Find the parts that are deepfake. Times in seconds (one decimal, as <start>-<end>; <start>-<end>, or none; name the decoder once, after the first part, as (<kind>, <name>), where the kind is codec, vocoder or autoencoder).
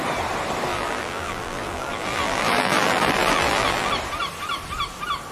0.7-3.9 (vocoder, BigVGAN v2)